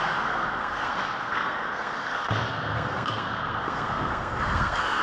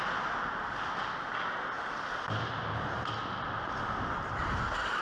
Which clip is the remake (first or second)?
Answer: first